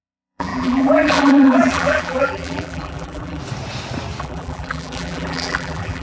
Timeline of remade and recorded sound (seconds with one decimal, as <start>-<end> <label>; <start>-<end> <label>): 0.0-3.4 remade; 3.4-4.2 recorded; 4.2-6.0 remade